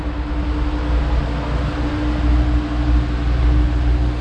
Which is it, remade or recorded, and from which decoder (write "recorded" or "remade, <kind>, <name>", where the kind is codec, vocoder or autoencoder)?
recorded